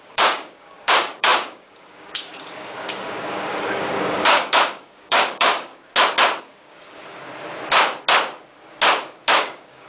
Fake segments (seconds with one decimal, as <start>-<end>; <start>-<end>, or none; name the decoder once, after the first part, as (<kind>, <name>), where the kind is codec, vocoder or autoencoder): 0.0-5.7 (codec, DAC); 6.4-7.3; 9.3-9.9